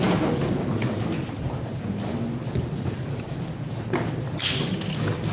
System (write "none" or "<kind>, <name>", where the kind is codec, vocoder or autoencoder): none